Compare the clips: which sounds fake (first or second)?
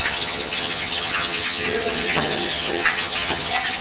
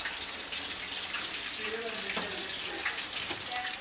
first